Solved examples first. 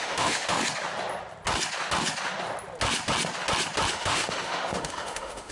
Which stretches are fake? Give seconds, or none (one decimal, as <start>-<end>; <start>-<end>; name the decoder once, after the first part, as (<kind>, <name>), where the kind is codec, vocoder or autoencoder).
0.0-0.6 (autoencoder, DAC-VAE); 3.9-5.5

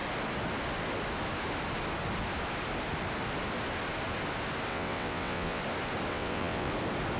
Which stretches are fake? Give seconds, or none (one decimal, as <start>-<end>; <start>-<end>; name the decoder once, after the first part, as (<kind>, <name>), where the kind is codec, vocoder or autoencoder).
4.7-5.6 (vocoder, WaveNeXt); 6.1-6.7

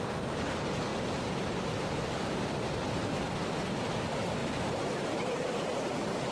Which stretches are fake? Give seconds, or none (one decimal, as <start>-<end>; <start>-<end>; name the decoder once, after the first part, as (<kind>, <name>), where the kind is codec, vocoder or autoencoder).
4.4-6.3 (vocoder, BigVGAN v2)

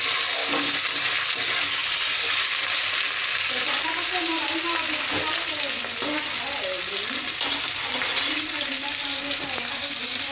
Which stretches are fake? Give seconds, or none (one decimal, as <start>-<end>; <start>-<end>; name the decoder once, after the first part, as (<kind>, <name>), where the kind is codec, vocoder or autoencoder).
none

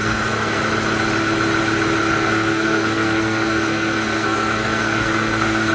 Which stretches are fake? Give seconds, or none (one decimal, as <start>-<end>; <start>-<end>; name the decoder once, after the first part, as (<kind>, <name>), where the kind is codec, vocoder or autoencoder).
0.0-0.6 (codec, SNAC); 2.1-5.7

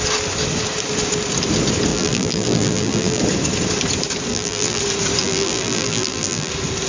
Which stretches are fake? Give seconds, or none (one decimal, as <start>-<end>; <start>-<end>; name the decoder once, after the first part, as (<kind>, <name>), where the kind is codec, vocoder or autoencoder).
1.9-3.2 (vocoder, BigVGAN v2); 4.3-4.8; 5.2-6.5